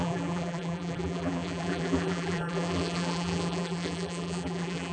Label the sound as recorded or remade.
remade